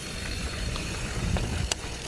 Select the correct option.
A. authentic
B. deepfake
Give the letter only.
B